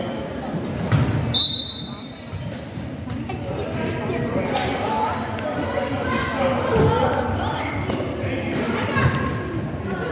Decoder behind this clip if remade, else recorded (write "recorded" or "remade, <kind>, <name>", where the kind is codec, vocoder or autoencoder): recorded